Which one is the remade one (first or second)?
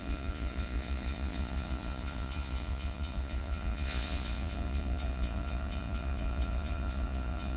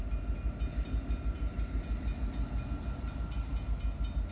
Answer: first